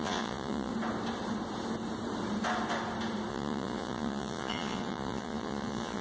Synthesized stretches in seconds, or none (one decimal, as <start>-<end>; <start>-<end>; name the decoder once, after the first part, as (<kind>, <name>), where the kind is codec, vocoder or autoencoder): 0.0-0.7 (vocoder, Vocos); 3.3-6.0